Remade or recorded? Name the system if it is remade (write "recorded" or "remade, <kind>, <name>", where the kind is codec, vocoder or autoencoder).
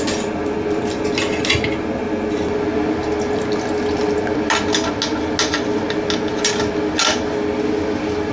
recorded